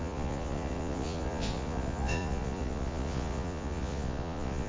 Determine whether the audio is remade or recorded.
remade